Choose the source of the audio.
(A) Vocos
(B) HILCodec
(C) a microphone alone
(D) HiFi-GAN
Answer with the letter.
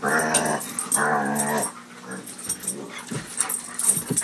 C